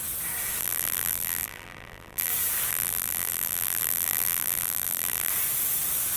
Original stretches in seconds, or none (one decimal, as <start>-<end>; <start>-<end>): 0.0-0.6; 2.3-2.7; 5.3-6.2